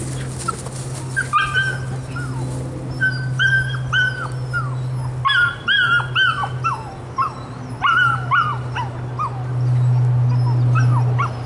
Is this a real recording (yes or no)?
yes